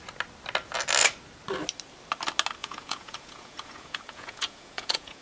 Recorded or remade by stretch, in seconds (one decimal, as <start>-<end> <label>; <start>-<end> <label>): 0.0-2.6 recorded; 2.6-5.2 remade